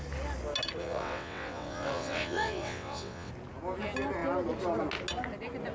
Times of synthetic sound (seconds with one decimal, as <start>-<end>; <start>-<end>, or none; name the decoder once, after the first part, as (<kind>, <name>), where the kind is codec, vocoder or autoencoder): 0.8-3.3 (vocoder, WaveNeXt)